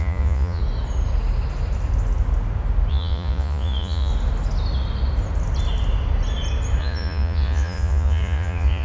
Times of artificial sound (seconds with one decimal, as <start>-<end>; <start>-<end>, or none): 0.0-0.6; 2.9-4.1; 6.8-8.8